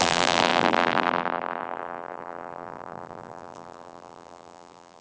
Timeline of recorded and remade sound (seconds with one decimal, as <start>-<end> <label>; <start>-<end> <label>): 0.0-5.0 remade